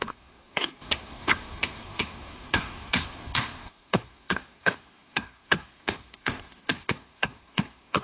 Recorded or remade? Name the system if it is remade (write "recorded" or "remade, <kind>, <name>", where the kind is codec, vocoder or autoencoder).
remade, codec, SNAC